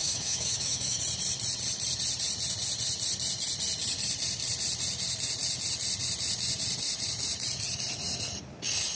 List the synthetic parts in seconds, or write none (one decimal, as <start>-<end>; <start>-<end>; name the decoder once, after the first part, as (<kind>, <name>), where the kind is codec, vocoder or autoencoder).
0.0-1.0 (autoencoder, DAC-VAE)